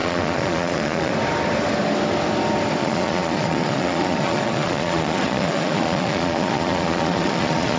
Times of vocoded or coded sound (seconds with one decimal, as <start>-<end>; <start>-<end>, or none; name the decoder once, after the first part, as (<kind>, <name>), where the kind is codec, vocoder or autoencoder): 0.0-1.1 (vocoder, Vocos); 2.8-7.8

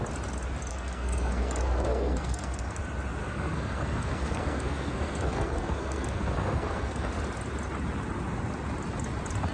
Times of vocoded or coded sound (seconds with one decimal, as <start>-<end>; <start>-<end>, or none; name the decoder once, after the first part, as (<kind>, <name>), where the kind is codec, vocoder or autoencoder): 0.7-2.8 (codec, SNAC); 3.2-7.1

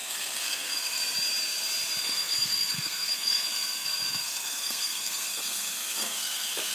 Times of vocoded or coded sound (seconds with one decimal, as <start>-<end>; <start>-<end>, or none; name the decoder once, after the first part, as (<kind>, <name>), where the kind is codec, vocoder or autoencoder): 0.0-1.0 (codec, SNAC); 2.0-6.7

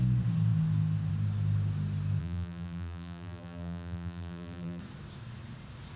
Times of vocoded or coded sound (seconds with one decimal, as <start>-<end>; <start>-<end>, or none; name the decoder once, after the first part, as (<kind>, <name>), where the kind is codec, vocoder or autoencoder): 2.2-4.8 (vocoder, BigVGAN v2)

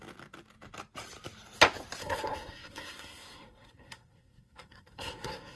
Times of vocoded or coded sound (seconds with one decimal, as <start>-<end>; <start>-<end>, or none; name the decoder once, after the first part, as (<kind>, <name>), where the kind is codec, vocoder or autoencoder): 2.0-5.6 (codec, SNAC)